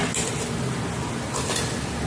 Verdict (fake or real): real